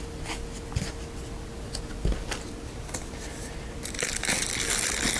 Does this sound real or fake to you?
real